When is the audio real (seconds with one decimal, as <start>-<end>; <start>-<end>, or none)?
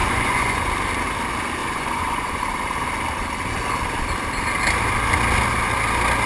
0.7-1.6; 2.4-6.3